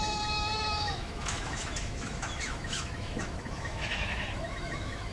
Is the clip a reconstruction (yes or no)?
yes